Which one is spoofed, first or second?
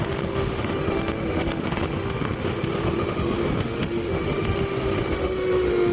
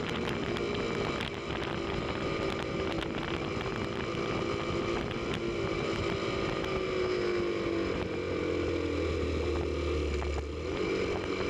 first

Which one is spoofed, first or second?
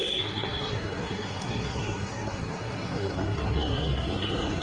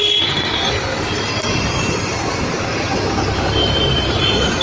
first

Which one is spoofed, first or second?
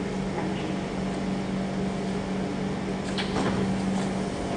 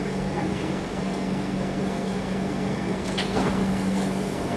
second